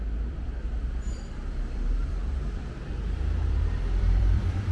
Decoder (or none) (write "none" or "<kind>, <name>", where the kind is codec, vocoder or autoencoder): vocoder, BigVGAN v2